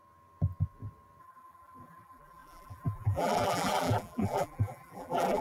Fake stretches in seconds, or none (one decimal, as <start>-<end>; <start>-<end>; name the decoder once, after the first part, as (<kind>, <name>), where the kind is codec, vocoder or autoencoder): 1.2-5.4 (vocoder, BigVGAN v2)